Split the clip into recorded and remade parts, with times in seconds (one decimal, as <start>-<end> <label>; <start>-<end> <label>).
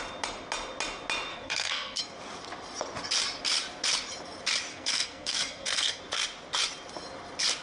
0.0-1.3 recorded; 1.3-2.0 remade; 2.0-4.7 recorded; 4.7-6.0 remade; 6.0-7.6 recorded